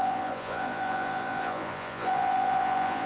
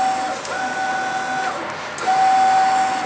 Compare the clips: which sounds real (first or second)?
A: second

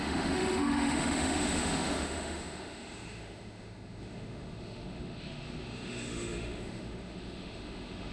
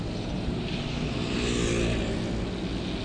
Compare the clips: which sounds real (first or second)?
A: second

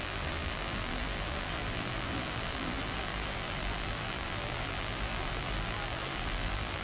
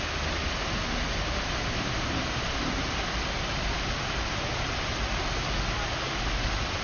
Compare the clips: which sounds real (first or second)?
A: second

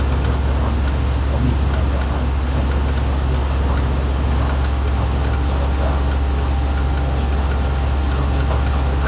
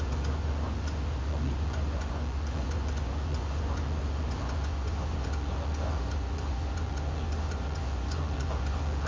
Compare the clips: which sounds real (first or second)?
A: first